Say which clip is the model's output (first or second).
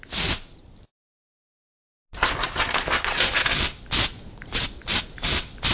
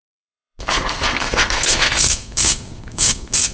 second